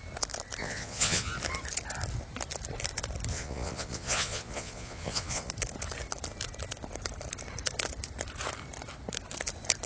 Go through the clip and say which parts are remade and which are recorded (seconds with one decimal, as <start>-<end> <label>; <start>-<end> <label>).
0.0-0.6 recorded; 0.6-1.3 remade; 1.3-3.3 recorded; 3.3-5.5 remade; 5.5-9.9 recorded